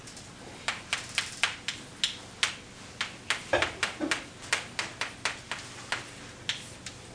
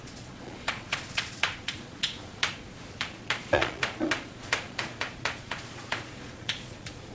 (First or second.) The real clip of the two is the first